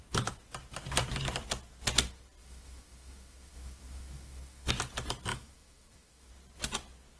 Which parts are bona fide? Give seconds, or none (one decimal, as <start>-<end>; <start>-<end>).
0.0-2.4; 4.7-5.3; 6.3-7.2

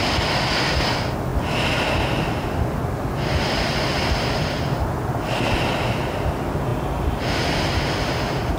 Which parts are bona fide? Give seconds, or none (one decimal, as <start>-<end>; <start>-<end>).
0.0-8.6